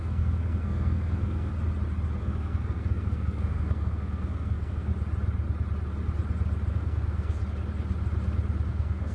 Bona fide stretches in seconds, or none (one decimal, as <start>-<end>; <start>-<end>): 1.5-2.2; 4.9-6.7; 7.4-8.7